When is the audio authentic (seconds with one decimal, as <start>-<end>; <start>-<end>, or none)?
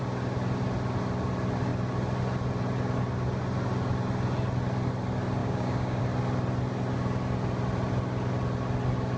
0.0-5.4; 6.0-9.2